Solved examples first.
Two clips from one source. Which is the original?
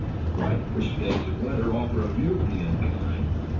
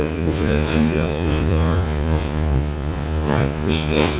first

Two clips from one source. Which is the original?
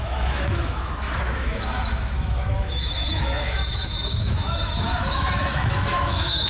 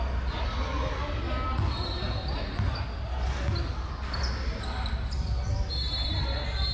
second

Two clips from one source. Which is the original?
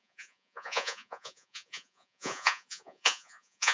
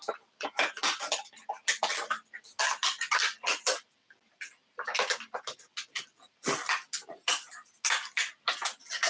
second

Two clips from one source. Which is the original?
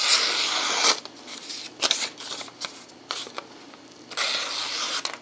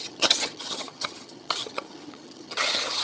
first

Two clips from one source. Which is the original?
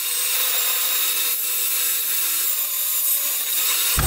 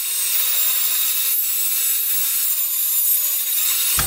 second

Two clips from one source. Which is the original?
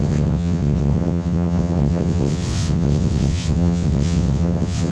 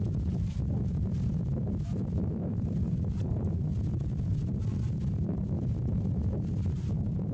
second